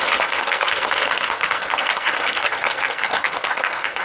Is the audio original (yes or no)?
no